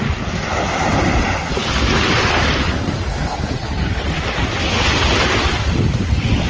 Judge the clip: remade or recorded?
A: recorded